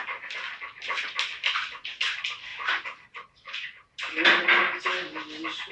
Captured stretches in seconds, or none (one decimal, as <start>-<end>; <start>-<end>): 0.0-2.5; 4.0-5.7